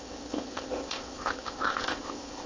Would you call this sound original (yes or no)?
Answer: no